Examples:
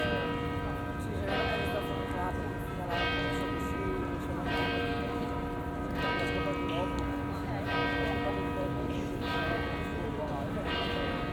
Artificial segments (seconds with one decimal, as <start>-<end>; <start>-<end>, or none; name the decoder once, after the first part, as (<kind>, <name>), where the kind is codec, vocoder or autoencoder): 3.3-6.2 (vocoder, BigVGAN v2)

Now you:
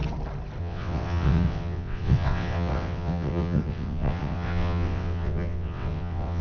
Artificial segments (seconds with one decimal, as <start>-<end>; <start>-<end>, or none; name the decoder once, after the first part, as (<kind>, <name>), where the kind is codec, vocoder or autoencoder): 0.6-6.4 (vocoder, WaveNeXt)

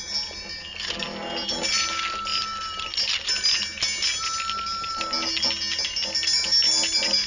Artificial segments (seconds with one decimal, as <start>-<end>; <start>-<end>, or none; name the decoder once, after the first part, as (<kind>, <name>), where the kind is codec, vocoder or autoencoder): none

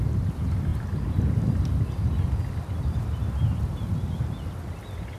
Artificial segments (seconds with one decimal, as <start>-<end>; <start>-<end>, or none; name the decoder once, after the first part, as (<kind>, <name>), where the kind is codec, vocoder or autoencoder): none